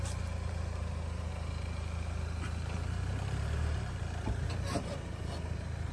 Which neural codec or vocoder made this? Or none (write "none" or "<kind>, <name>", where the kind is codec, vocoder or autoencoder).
none